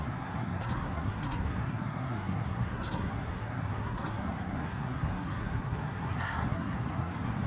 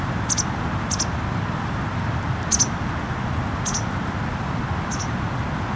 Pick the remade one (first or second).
first